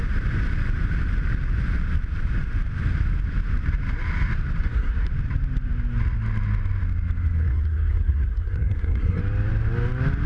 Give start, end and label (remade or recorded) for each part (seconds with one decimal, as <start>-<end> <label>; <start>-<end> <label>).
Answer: 0.0-4.6 recorded; 4.6-5.1 remade; 5.1-7.4 recorded; 7.4-9.2 remade; 9.2-10.3 recorded